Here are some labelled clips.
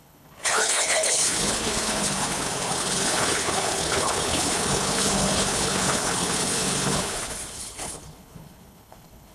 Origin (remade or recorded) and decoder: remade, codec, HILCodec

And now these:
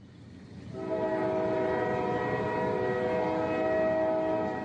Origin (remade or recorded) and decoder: recorded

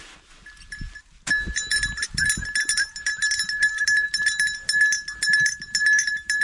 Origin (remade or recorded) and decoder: recorded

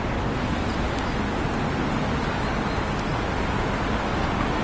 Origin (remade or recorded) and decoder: recorded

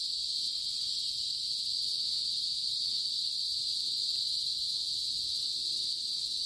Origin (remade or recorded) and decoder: recorded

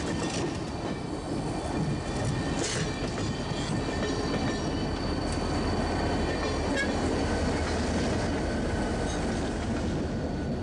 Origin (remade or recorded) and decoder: recorded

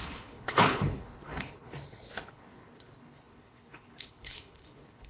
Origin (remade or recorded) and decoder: remade, codec, HILCodec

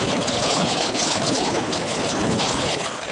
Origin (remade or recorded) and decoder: remade, codec, HILCodec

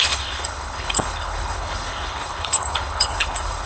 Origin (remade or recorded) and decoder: remade, codec, HILCodec